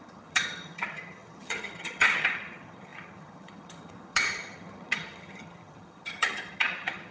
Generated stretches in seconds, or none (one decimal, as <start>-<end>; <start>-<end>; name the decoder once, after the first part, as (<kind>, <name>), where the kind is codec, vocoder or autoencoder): 0.0-7.1 (vocoder, HiFi-GAN)